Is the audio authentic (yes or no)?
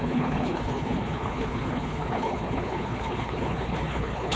no